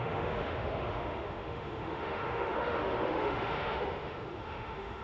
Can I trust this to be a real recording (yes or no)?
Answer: no